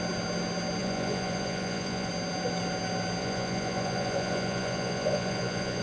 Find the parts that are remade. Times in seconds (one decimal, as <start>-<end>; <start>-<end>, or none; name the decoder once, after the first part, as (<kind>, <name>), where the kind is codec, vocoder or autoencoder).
0.8-2.1 (vocoder, Vocos); 3.2-5.8